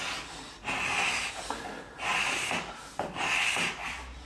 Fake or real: real